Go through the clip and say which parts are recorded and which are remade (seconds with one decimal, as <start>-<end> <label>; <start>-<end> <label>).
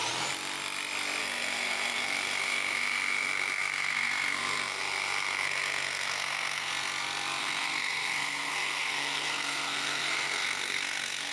0.0-1.2 recorded; 1.2-6.7 remade; 6.7-7.4 recorded; 7.4-11.3 remade